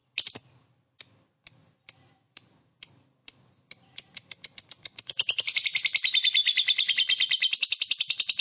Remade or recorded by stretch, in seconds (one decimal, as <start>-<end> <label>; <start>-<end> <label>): 0.0-8.4 recorded